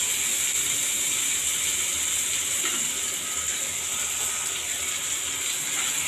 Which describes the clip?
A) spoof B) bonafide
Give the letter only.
B